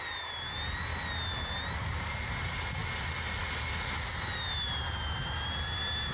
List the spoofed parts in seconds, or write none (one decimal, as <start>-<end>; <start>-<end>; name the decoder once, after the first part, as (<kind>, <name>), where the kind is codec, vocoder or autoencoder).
none